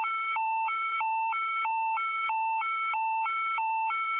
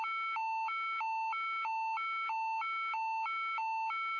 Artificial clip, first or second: first